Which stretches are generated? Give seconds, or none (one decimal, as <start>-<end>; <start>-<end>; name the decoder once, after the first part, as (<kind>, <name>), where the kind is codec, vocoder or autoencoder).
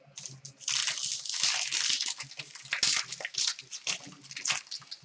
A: none